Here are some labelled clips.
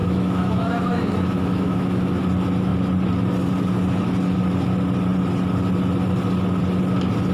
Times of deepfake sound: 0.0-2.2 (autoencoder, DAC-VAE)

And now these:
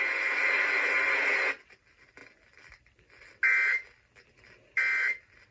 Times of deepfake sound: none

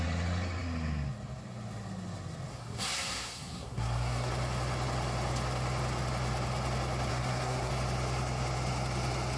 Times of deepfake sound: 2.5-4.3 (codec, SNAC); 7.1-7.7

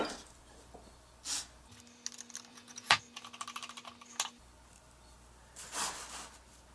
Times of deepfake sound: 2.5-3.0 (vocoder, Vocos)